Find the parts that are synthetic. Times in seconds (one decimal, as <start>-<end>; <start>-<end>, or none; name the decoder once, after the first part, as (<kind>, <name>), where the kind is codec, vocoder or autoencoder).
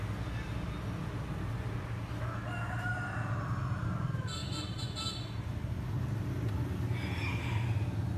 none